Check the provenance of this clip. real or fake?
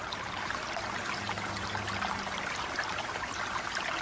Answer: real